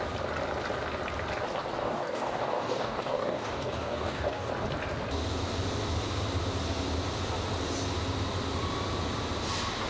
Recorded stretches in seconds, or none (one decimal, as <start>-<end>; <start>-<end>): 0.0-1.8; 4.5-9.9